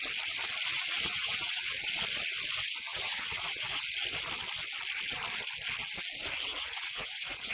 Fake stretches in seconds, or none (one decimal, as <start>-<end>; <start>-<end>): 0.7-2.0; 2.9-3.8; 6.5-7.5

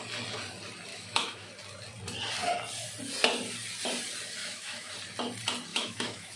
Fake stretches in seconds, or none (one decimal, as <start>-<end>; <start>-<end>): 0.9-1.5; 4.4-4.9; 5.7-6.4